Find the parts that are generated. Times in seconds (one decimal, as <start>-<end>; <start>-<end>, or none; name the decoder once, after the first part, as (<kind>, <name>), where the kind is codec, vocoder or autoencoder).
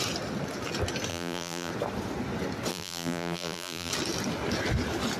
1.1-1.7 (vocoder, BigVGAN v2); 2.7-3.9